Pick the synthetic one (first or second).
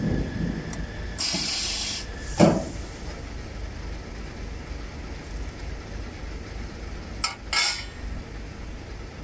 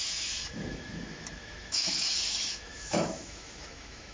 second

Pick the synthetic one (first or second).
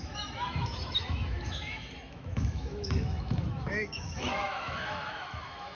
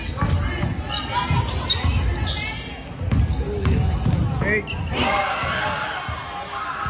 first